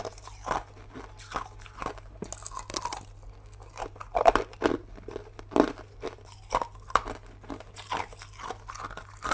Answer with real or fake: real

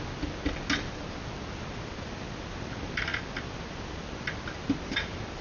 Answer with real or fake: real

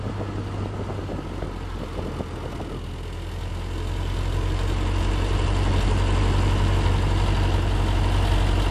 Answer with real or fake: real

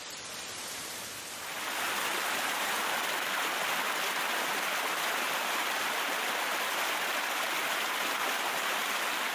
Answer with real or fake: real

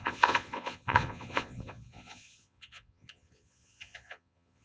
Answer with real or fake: fake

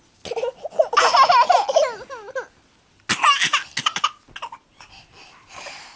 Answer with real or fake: real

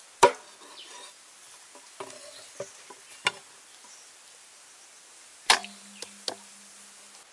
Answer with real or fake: real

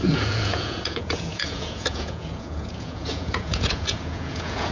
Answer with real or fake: fake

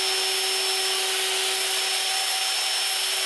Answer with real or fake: real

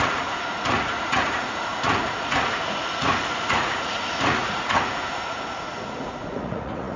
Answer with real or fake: fake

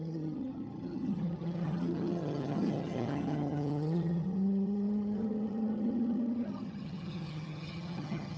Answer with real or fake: fake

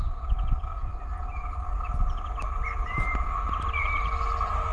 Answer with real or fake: real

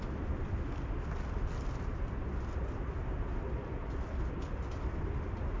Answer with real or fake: real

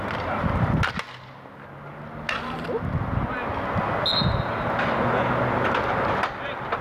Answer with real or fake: real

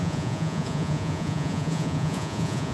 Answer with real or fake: fake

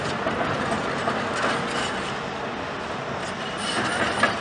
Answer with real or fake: real